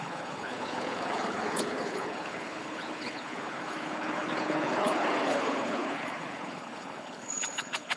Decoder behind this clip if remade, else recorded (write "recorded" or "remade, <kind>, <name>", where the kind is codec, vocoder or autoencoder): remade, codec, HILCodec